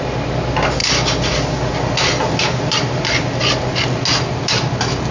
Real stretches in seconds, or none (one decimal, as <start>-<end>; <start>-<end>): 0.0-5.1